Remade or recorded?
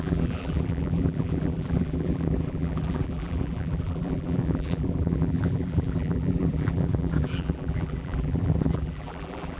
remade